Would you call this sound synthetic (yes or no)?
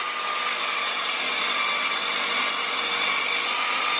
no